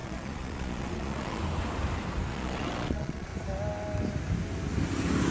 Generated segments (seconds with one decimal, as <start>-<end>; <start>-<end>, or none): 0.0-1.4; 2.3-3.3